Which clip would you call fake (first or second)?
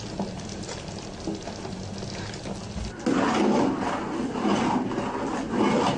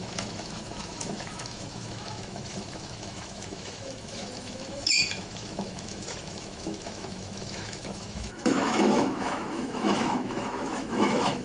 second